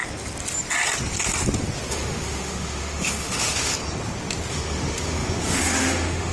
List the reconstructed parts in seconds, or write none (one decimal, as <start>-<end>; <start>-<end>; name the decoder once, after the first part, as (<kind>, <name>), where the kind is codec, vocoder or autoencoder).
1.9-3.7 (autoencoder, DAC-VAE); 4.5-6.3